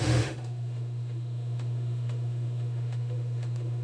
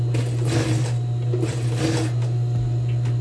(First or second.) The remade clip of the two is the first